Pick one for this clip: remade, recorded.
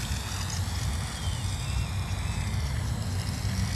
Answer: recorded